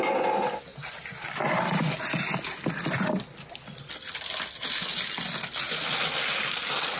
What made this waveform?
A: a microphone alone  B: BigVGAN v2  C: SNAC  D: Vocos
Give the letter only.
A